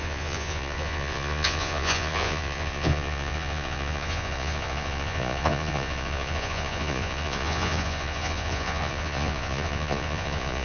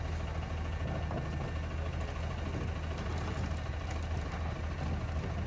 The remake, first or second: first